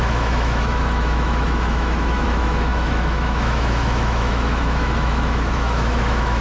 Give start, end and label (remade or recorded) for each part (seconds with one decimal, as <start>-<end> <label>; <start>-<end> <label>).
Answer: 0.0-6.4 remade